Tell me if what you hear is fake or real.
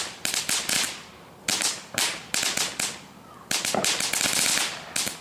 fake